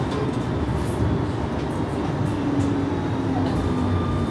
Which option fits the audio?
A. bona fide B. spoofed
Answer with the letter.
A